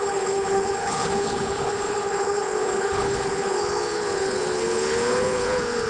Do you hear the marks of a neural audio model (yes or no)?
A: yes